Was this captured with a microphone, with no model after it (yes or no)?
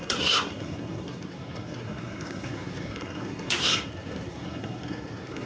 no